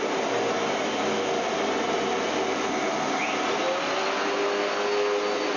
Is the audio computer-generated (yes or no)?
no